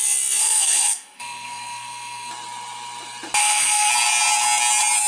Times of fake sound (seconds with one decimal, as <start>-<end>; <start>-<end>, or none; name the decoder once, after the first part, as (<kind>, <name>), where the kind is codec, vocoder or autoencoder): 0.4-2.3 (codec, SNAC); 3.4-3.9